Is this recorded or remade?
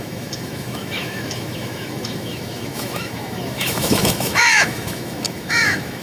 remade